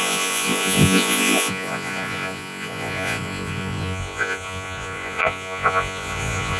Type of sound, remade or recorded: remade